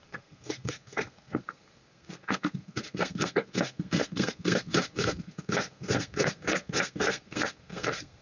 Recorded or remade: remade